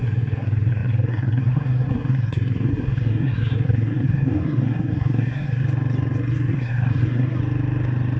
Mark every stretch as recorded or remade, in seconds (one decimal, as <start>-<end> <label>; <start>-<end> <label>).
0.0-5.6 remade; 5.6-6.5 recorded; 6.5-7.4 remade; 7.4-8.2 recorded